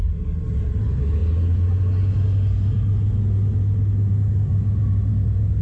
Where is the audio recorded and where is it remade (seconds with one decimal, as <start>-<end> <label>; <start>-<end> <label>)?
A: 0.0-5.6 recorded

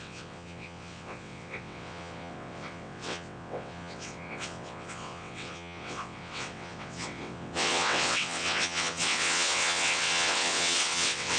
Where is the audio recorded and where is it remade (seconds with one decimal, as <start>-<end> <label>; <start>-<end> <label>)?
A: 0.0-11.4 remade

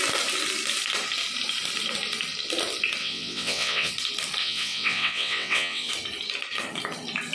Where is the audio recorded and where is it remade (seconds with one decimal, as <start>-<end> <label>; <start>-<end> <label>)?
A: 0.0-3.0 recorded; 3.0-3.9 remade; 3.9-4.4 recorded; 4.4-5.9 remade; 5.9-7.3 recorded

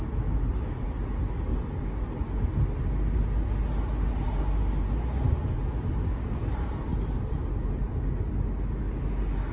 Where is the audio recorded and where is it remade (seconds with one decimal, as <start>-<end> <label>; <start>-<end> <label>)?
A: 0.0-9.5 recorded

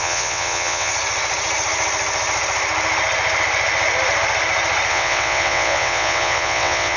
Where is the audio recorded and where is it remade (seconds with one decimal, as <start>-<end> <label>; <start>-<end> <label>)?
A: 0.0-0.9 remade; 0.9-4.9 recorded; 4.9-7.0 remade

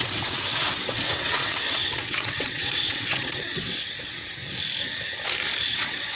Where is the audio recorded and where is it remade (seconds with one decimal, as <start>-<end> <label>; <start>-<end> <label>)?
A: 0.0-4.4 remade; 4.4-5.7 recorded; 5.7-6.2 remade

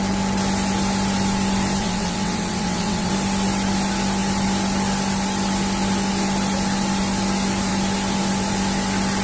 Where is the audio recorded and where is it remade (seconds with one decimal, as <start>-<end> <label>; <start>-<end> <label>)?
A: 0.0-1.8 recorded; 1.8-3.1 remade; 3.1-9.2 recorded